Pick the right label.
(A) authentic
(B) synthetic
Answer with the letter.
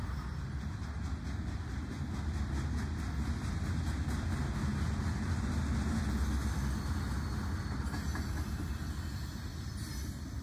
A